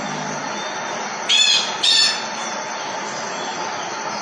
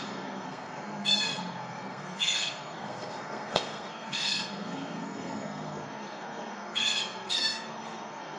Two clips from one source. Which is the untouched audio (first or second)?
first